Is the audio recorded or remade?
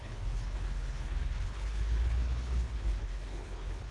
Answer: remade